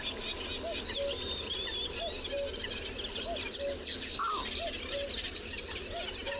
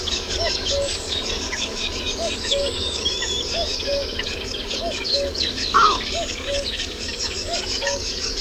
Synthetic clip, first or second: second